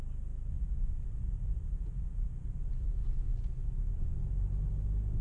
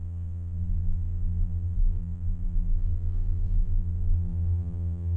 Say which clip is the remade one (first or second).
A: second